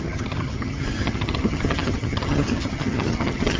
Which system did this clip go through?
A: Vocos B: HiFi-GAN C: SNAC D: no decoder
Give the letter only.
B